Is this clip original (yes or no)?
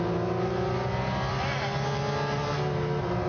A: yes